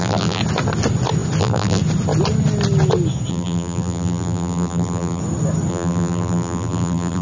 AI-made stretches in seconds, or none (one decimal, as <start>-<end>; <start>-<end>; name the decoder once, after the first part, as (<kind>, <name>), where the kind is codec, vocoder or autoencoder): 0.0-0.4 (vocoder, BigVGAN v2); 1.4-1.8; 3.3-5.2; 5.7-7.2